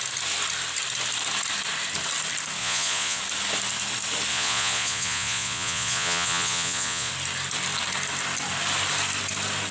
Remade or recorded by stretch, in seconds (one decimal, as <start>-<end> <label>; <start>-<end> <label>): 0.0-2.6 recorded; 2.6-3.2 remade; 3.2-4.3 recorded; 4.3-7.1 remade; 7.1-9.7 recorded